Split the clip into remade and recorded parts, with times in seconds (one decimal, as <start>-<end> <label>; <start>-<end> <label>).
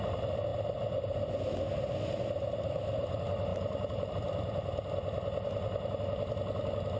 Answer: 0.0-3.5 recorded; 3.5-4.1 remade; 4.1-7.0 recorded